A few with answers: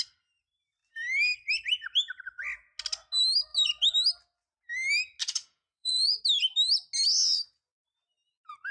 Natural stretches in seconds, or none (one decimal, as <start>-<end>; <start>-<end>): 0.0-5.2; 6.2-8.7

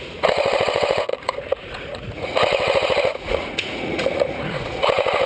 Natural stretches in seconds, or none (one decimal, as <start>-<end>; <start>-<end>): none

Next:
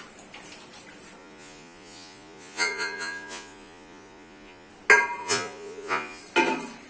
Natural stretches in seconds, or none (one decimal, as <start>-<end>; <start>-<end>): 0.0-1.2; 4.7-5.2; 6.2-6.9